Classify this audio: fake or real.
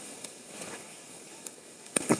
fake